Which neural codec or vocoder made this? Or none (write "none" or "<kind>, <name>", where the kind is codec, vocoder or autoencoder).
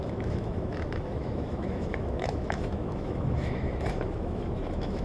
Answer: autoencoder, DAC-VAE